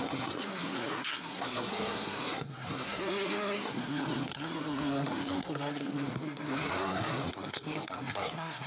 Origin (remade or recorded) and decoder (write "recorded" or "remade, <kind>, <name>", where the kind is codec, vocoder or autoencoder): remade, codec, SNAC